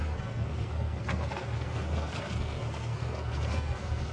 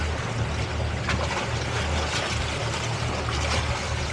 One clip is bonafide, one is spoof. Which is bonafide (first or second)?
second